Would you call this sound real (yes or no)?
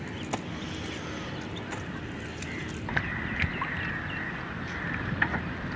yes